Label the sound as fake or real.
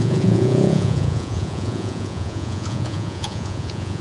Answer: fake